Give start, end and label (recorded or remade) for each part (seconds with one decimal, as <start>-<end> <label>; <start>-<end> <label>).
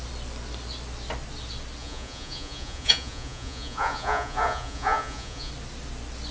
0.0-1.8 recorded; 1.8-5.5 remade; 5.5-6.3 recorded